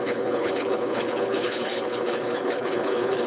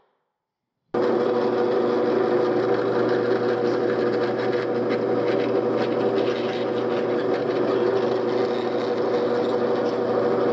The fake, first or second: first